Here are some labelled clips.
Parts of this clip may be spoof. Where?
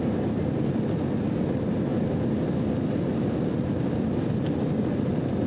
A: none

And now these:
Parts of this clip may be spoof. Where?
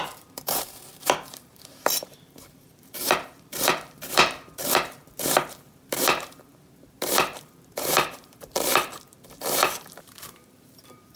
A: 0.0-11.2 (vocoder, BigVGAN v2)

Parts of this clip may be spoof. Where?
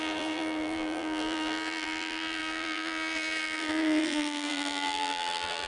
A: 0.0-5.7 (vocoder, BigVGAN v2)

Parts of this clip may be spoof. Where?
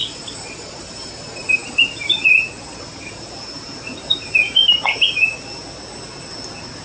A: 0.0-6.8 (vocoder, BigVGAN v2)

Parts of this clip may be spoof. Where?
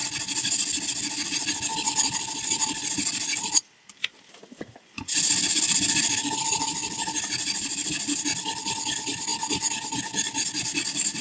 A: 1.9-11.2 (vocoder, BigVGAN v2)